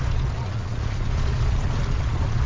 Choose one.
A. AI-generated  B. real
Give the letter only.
A